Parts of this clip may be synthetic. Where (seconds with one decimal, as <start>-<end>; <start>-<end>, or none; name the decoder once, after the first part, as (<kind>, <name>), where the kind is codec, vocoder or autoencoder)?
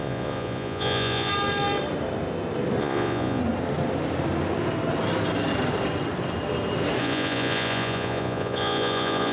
0.0-1.3 (vocoder, Vocos); 2.8-3.4; 7.0-9.3